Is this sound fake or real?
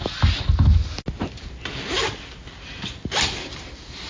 real